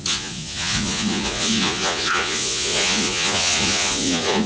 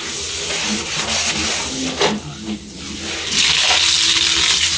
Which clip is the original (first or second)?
second